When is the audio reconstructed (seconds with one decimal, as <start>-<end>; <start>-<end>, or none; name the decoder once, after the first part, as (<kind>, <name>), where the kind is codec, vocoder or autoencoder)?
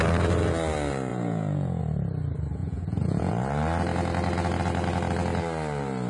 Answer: 1.1-1.8 (vocoder, Vocos); 2.6-3.3